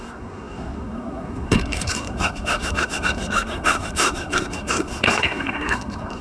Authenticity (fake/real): fake